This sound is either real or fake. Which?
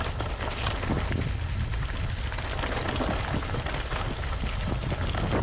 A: real